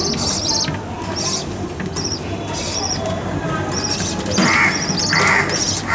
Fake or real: real